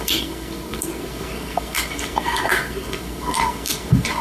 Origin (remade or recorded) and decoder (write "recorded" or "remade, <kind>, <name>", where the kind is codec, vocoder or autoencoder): remade, codec, SNAC